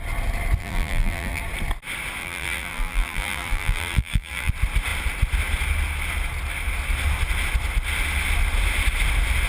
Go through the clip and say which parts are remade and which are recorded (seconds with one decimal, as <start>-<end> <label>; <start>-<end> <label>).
0.0-0.6 recorded; 0.6-1.4 remade; 1.4-2.2 recorded; 2.2-4.5 remade; 4.5-9.5 recorded